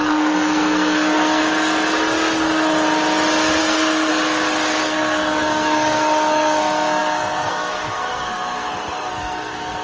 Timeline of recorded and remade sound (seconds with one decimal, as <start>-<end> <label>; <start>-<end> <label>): 0.0-1.4 remade; 1.4-3.6 recorded; 3.6-4.1 remade; 4.1-4.8 recorded; 4.8-9.8 remade